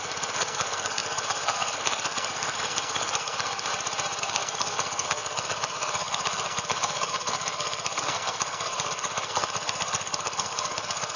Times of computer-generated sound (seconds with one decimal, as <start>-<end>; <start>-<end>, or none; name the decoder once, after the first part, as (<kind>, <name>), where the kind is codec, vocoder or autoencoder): 0.0-3.7 (codec, SNAC); 4.2-11.2